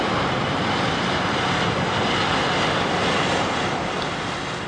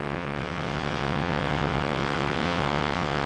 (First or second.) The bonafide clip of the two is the first